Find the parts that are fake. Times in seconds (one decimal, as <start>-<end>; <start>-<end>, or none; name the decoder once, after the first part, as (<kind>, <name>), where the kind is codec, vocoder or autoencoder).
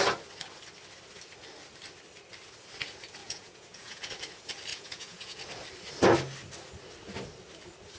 3.2-4.1 (vocoder, Vocos); 4.7-5.4